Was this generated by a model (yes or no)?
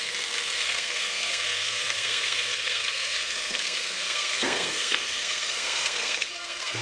yes